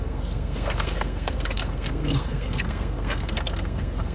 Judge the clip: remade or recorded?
remade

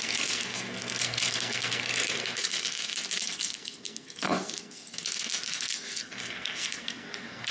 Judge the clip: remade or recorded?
remade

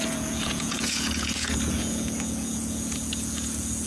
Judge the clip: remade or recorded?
remade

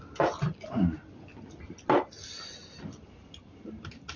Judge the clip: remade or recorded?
recorded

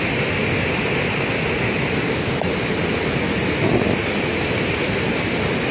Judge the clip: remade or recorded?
recorded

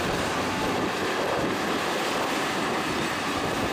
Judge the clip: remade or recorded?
recorded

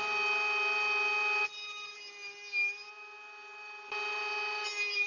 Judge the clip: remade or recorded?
recorded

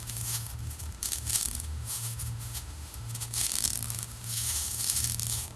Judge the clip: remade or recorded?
remade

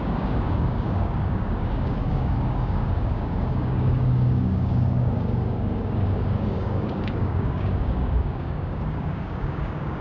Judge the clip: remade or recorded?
remade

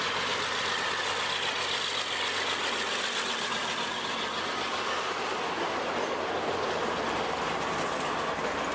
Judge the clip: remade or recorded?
recorded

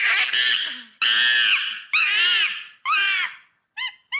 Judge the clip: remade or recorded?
recorded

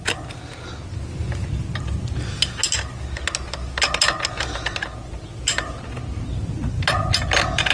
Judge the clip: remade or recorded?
recorded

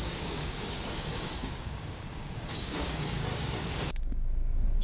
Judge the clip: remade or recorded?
remade